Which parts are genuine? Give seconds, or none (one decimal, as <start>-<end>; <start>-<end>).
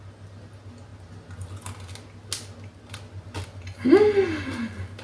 0.0-5.0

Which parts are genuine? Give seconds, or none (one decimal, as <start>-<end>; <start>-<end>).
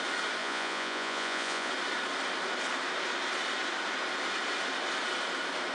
0.0-0.4; 1.7-5.7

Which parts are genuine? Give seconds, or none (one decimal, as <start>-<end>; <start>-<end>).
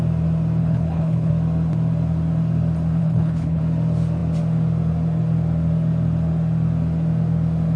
0.0-0.6; 1.3-3.0; 3.6-7.8